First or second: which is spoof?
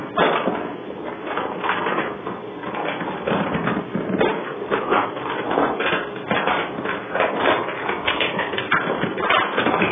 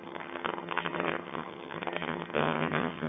second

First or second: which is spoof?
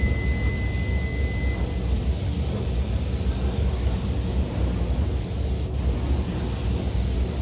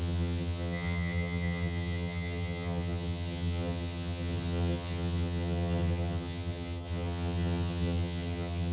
second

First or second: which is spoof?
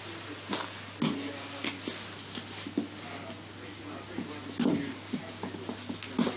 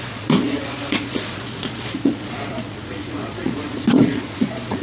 second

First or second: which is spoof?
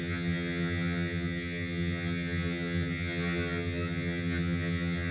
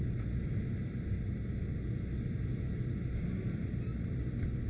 first